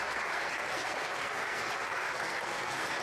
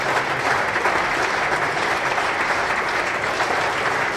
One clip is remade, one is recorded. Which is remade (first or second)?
first